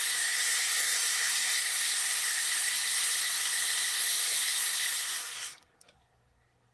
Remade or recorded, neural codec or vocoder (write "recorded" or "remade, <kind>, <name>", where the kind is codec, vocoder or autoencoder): remade, codec, SNAC